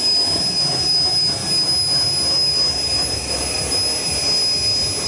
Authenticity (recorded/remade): recorded